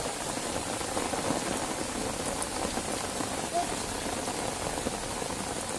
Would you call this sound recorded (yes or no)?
yes